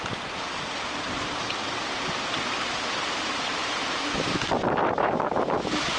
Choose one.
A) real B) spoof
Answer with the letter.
B